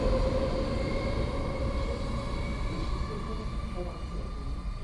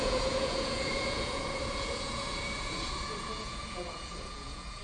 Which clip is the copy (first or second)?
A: second